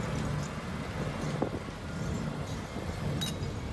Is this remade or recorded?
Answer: recorded